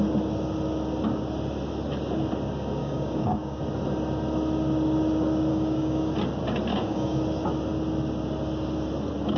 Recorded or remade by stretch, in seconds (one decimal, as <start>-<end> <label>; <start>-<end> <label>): 0.0-2.8 recorded; 2.8-3.6 remade; 3.6-5.5 recorded; 5.5-6.1 remade; 6.1-6.7 recorded; 6.7-7.2 remade; 7.2-9.4 recorded